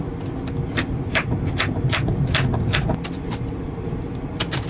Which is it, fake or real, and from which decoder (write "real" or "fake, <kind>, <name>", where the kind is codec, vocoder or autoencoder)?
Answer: real